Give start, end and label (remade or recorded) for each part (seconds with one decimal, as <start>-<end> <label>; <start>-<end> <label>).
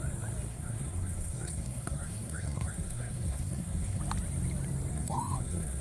0.0-0.5 recorded; 0.5-4.0 remade; 4.0-4.9 recorded; 4.9-5.8 remade